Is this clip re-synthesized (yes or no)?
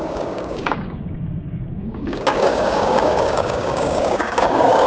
yes